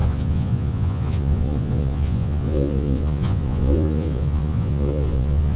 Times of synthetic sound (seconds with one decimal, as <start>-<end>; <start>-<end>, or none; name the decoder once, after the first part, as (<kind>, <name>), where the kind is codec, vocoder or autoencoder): 0.0-5.6 (vocoder, Vocos)